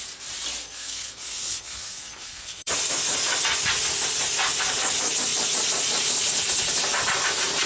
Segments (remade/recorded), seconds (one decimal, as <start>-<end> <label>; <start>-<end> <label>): 0.0-0.6 recorded; 0.6-2.7 remade; 2.7-7.7 recorded